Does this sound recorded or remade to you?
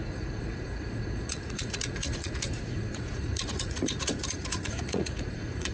remade